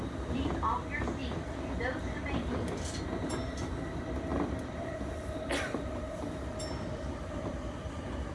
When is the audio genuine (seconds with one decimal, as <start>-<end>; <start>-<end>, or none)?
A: 0.0-1.2; 3.7-4.3